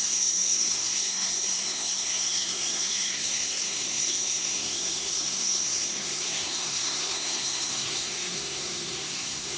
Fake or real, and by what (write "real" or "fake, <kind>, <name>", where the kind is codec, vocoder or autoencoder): fake, codec, SNAC